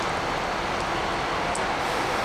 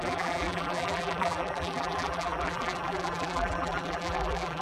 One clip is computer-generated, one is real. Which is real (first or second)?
first